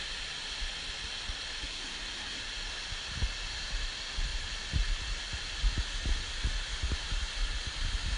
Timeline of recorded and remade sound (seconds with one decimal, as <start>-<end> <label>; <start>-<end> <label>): 0.0-1.6 recorded; 1.6-2.4 remade; 2.4-8.2 recorded